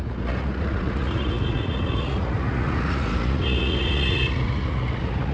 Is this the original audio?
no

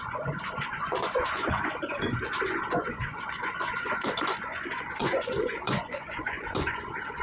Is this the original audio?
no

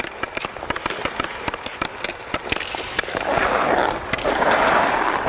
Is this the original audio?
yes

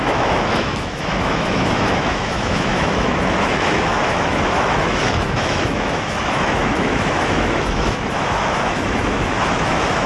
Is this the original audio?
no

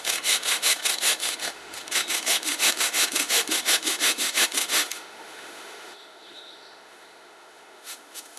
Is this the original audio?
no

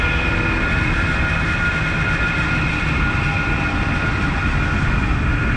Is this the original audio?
yes